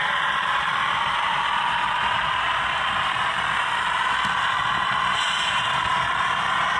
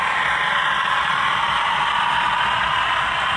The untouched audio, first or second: second